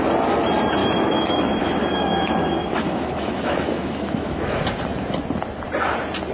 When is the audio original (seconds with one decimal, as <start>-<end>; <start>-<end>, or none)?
0.0-0.8; 4.6-6.3